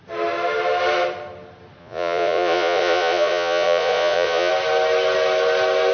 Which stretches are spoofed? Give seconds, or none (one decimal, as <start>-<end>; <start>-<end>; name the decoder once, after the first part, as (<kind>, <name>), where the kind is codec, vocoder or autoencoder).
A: 1.8-4.5 (vocoder, Vocos)